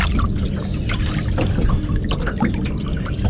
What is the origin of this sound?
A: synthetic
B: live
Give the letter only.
B